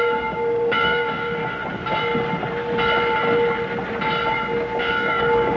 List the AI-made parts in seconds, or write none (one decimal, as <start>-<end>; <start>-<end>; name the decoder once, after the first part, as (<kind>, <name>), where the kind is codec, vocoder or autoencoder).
0.0-1.4 (codec, DAC); 4.8-5.6